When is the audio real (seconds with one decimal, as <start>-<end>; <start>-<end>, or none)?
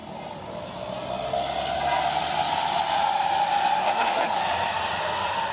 0.0-3.8; 4.4-5.5